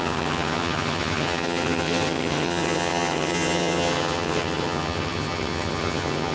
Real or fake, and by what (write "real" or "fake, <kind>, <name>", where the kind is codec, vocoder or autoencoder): fake, vocoder, HiFi-GAN